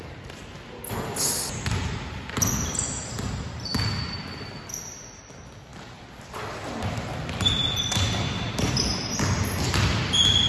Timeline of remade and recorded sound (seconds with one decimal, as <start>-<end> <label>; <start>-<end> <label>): 0.0-10.5 recorded